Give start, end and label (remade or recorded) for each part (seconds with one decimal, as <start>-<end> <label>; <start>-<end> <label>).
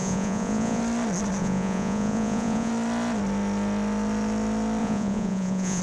0.0-0.8 remade; 0.8-1.4 recorded; 1.4-2.7 remade; 2.7-4.8 recorded; 4.8-5.8 remade